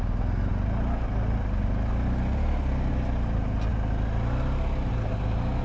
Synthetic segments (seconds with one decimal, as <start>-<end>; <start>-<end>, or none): none